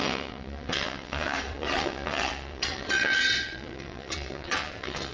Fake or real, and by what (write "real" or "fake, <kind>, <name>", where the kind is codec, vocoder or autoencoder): fake, vocoder, WaveNeXt